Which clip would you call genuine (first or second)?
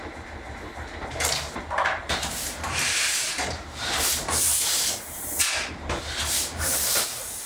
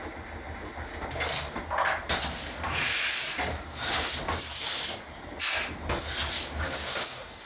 second